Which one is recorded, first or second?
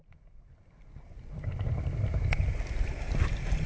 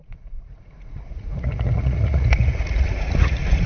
first